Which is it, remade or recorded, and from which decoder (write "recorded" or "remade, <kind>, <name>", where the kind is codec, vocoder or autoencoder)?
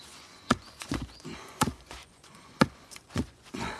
remade, vocoder, Vocos